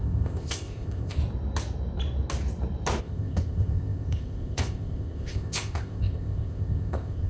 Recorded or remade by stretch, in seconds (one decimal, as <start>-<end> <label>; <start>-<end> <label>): 0.0-1.2 remade; 1.2-3.0 recorded; 3.0-7.3 remade

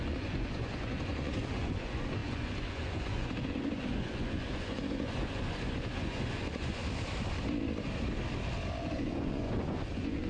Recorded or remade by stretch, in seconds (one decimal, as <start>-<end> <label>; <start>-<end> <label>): 0.0-6.8 remade; 6.8-8.8 recorded; 8.8-10.3 remade

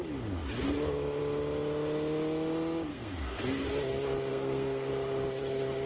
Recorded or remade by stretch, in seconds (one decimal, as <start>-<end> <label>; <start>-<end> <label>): 0.0-2.9 recorded; 2.9-3.4 remade; 3.4-4.3 recorded; 4.3-4.9 remade; 4.9-5.9 recorded

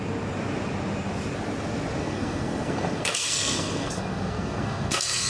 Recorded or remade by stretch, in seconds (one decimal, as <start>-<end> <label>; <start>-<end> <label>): 0.0-2.0 recorded; 2.0-5.3 remade